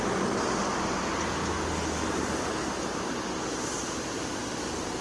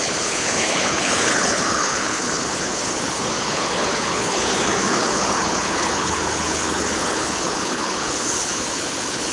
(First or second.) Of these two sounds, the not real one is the second